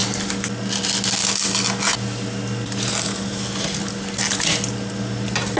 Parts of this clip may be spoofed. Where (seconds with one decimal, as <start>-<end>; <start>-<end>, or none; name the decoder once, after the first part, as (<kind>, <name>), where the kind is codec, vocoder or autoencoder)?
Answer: none